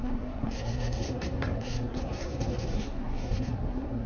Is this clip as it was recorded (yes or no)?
no